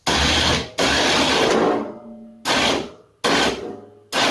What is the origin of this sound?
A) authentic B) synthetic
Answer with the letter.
A